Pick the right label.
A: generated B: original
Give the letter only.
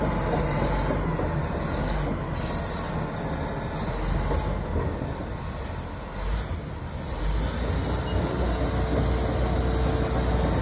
B